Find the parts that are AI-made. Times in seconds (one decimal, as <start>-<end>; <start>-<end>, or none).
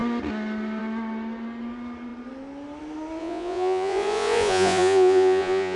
3.2-5.8